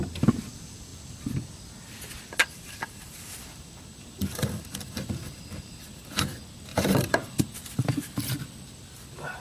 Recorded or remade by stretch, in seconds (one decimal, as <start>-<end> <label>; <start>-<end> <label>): 0.0-2.4 recorded; 2.4-6.2 remade; 6.2-6.7 recorded; 6.7-7.5 remade; 7.5-9.4 recorded